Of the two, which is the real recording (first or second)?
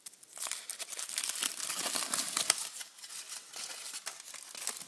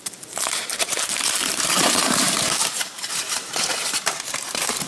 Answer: first